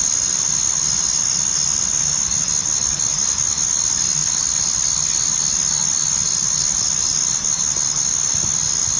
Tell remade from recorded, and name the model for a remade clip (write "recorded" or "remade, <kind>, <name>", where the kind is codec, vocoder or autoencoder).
recorded